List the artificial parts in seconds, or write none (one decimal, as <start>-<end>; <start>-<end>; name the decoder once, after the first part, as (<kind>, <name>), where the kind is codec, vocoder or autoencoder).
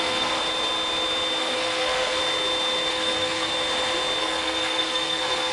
0.0-0.4 (codec, SNAC); 1.4-2.2; 2.9-3.5; 4.2-5.5